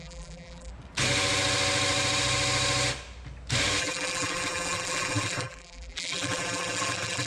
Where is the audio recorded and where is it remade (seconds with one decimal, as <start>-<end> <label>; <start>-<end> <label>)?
0.0-0.7 remade; 0.7-3.8 recorded; 3.8-7.3 remade